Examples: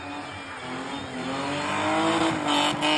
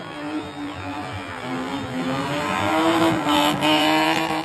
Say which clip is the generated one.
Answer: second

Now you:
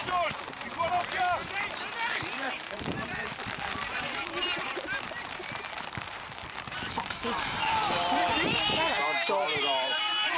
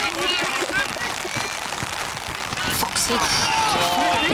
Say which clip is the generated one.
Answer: first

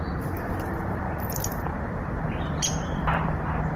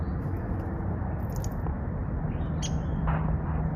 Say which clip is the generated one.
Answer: first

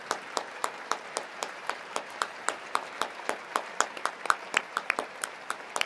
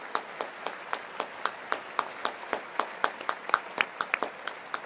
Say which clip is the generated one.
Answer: first